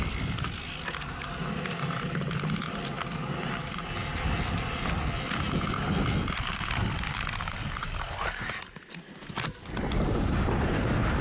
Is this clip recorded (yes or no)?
yes